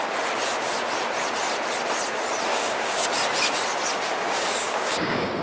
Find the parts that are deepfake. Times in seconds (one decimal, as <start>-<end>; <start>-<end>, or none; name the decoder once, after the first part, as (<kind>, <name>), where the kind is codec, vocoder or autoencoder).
2.5-3.1 (codec, DAC); 4.1-5.4